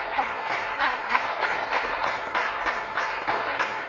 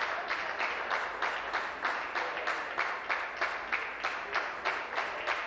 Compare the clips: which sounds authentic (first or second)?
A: second